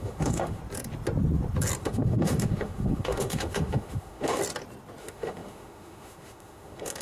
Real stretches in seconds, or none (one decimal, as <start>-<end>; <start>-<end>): 0.6-1.8; 4.4-5.0